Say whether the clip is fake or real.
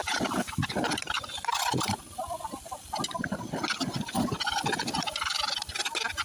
real